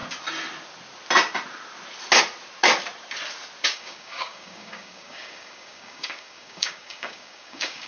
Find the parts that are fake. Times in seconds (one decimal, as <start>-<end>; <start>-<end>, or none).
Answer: 3.7-7.9